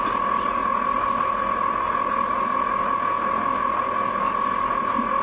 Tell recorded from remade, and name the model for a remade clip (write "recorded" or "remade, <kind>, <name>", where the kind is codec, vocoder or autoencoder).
recorded